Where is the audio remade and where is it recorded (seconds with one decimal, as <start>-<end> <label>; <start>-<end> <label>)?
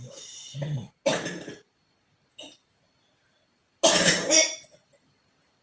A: 0.0-5.6 recorded